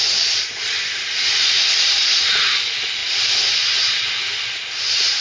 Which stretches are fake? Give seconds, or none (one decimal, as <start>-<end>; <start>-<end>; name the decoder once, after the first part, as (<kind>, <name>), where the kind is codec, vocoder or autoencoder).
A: none